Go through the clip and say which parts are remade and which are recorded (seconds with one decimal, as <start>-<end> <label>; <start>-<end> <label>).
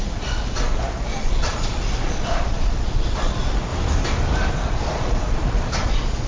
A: 0.0-3.7 remade; 3.7-4.5 recorded; 4.5-6.3 remade